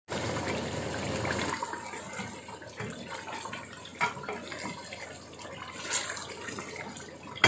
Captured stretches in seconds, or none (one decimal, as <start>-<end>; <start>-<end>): 0.0-7.5